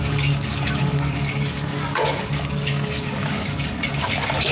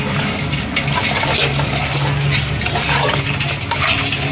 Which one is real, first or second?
second